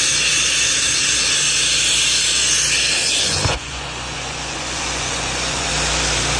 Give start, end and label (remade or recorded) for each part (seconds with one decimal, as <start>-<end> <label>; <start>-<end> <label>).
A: 0.0-3.0 recorded; 3.0-5.7 remade; 5.7-6.4 recorded

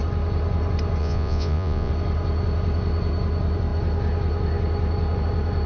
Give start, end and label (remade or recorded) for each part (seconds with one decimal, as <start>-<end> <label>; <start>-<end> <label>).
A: 0.0-1.0 recorded; 1.0-1.9 remade; 1.9-5.7 recorded

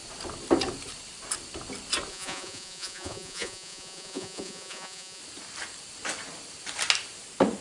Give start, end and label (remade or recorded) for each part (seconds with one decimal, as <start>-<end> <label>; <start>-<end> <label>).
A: 0.0-2.1 recorded; 2.1-5.2 remade; 5.2-7.6 recorded

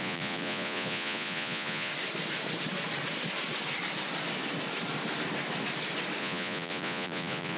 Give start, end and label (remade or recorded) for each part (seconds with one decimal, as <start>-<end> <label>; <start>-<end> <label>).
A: 0.0-1.9 remade; 1.9-6.2 recorded; 6.2-7.6 remade

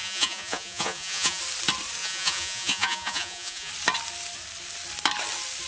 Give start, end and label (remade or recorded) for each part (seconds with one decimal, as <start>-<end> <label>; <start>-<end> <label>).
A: 0.0-1.4 remade; 1.4-2.0 recorded; 2.0-3.7 remade; 3.7-5.7 recorded

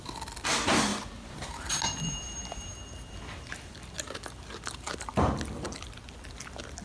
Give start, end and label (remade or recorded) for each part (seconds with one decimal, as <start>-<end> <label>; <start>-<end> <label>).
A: 0.0-6.8 recorded